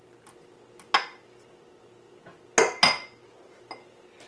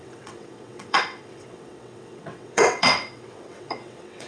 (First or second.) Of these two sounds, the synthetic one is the second